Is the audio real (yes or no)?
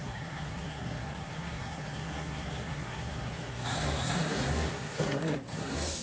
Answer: no